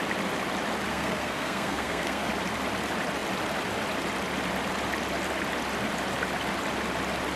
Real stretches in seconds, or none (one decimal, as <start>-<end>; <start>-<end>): 0.0-0.9; 2.3-7.4